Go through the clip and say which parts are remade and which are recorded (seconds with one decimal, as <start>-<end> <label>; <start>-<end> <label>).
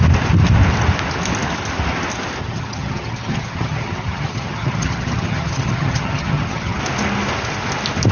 0.0-2.4 recorded; 2.4-6.8 remade; 6.8-8.1 recorded